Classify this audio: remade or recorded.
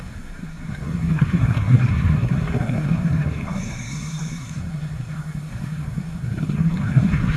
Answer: remade